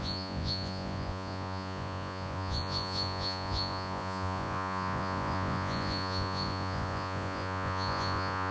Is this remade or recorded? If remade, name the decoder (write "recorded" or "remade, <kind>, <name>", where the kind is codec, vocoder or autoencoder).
remade, vocoder, Vocos